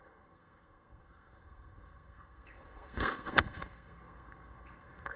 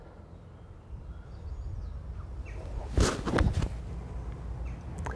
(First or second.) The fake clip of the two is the first